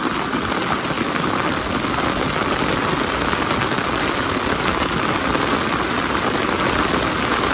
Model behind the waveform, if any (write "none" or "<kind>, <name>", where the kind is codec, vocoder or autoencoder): none